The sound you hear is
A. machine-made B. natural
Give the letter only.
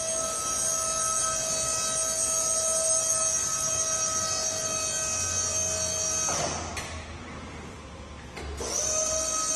B